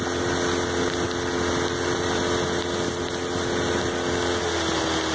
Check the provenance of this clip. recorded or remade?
recorded